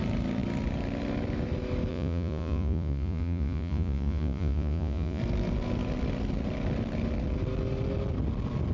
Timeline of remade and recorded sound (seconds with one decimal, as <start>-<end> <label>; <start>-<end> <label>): 0.0-1.9 recorded; 1.9-5.2 remade; 5.2-8.7 recorded